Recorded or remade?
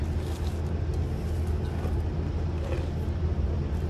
recorded